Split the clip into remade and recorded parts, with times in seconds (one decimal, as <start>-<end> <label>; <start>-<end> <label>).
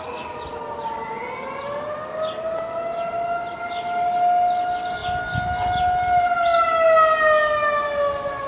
0.0-8.5 recorded